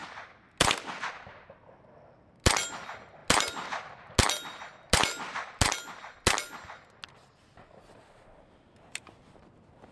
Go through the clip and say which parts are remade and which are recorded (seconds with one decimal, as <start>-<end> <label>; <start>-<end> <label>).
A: 0.0-9.9 recorded

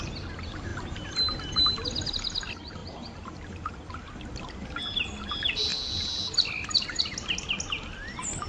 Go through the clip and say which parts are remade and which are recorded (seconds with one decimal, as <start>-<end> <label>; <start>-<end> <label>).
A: 0.0-8.5 recorded